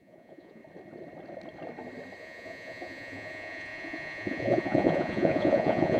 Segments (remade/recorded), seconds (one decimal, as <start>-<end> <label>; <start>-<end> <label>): 0.0-0.6 remade; 0.6-2.2 recorded; 2.2-6.0 remade